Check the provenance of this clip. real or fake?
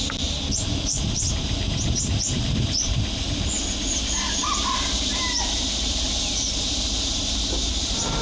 fake